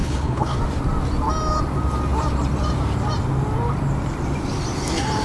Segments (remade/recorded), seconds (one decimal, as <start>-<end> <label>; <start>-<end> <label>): 0.0-0.6 remade; 0.6-5.2 recorded